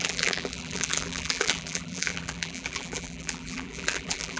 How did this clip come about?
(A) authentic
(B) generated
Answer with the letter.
B